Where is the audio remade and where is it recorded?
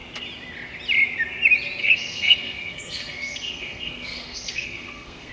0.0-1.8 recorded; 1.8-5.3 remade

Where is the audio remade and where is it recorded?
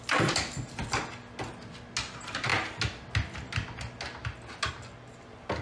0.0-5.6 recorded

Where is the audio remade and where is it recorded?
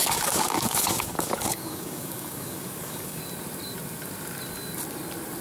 0.0-3.2 remade; 3.2-5.4 recorded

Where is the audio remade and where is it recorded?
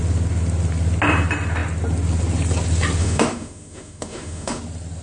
0.0-3.0 recorded; 3.0-4.6 remade; 4.6-5.0 recorded